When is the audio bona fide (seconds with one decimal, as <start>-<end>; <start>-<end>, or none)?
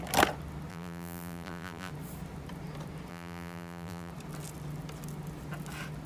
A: 0.0-0.7; 1.9-3.1; 4.1-6.1